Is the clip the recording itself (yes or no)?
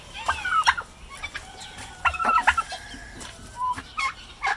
yes